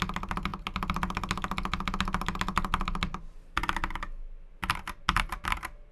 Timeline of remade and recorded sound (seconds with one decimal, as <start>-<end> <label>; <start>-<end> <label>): 0.0-5.9 recorded